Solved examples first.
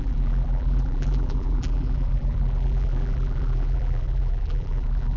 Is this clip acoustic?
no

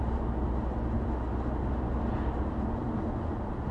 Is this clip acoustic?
yes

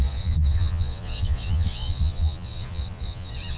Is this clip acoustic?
no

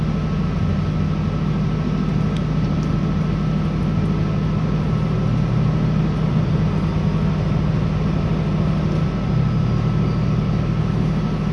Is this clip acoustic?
yes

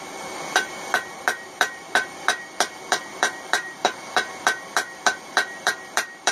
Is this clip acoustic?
no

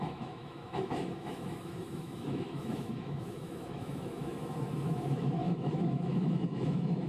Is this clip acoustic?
no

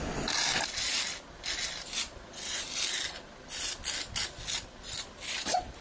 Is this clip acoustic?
yes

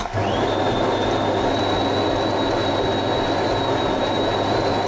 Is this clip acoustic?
yes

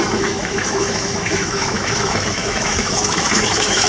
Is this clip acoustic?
no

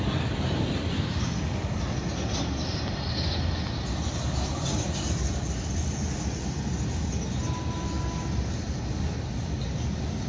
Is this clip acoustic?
yes